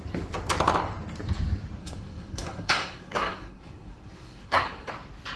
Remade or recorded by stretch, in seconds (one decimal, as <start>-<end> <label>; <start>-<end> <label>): 0.0-1.8 recorded; 1.8-4.9 remade; 4.9-5.4 recorded

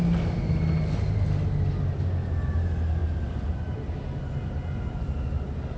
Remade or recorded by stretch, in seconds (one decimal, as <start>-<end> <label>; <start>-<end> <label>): 0.0-5.8 recorded

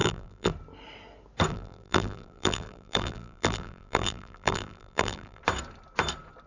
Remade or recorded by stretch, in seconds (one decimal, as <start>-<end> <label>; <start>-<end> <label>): 0.0-0.5 remade; 0.5-1.5 recorded; 1.5-5.4 remade; 5.4-6.5 recorded

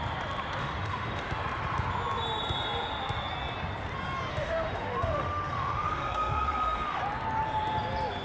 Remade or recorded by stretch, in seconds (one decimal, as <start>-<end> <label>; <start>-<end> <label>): 0.0-0.6 recorded; 0.6-1.2 remade; 1.2-4.3 recorded; 4.3-7.0 remade; 7.0-8.2 recorded